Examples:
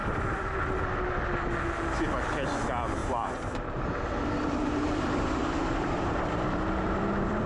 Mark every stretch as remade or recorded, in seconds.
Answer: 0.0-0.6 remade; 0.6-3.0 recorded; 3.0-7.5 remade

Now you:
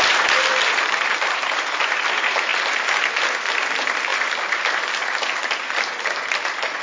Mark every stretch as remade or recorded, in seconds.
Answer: 0.0-6.8 recorded